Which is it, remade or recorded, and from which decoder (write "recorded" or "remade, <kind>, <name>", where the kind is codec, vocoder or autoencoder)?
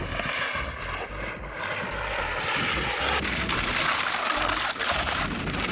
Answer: recorded